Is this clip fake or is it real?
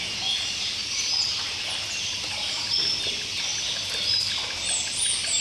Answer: real